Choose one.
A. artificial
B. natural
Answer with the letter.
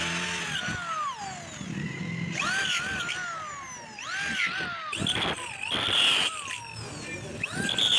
B